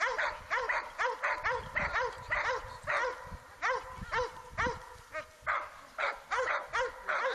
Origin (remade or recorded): recorded